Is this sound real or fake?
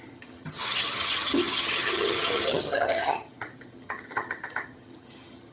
fake